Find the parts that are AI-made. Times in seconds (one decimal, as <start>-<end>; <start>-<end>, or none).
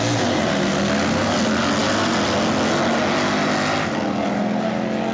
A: none